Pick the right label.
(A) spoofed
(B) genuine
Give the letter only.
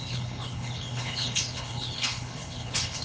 A